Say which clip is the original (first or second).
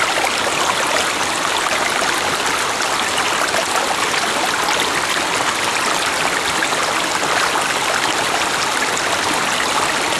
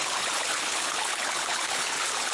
first